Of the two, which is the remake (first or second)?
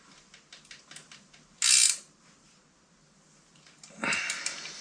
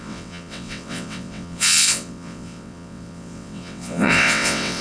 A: second